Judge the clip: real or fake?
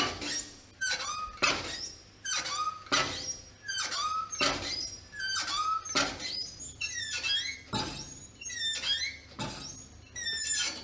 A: real